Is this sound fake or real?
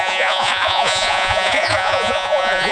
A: fake